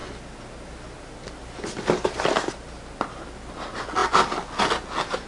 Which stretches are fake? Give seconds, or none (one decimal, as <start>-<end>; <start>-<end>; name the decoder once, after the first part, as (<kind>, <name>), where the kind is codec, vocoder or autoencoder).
none

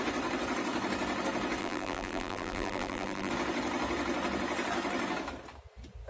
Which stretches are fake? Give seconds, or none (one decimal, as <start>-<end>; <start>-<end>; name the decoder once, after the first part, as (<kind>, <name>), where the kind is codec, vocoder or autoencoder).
1.6-3.3 (vocoder, BigVGAN v2)

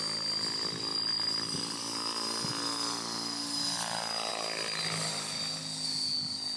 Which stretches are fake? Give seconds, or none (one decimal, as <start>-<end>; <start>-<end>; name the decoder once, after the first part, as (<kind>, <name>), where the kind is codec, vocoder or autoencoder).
0.9-1.8 (vocoder, BigVGAN v2)

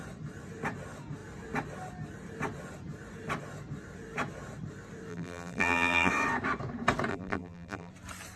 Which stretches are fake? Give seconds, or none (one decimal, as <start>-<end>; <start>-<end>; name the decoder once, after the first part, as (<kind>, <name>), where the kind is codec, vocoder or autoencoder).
5.1-6.1 (vocoder, BigVGAN v2); 7.1-7.9

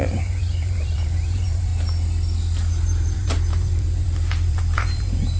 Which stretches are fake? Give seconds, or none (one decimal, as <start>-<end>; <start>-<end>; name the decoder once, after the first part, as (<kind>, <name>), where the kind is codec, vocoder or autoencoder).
0.0-1.7 (vocoder, BigVGAN v2); 2.7-5.4